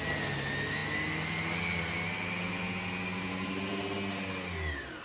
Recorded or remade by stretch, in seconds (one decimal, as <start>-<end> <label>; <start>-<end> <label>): 0.0-5.0 recorded